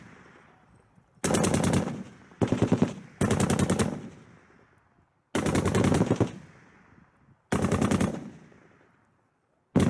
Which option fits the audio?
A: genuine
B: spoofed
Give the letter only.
A